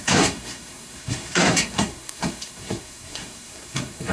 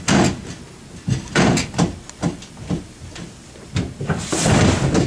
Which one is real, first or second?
second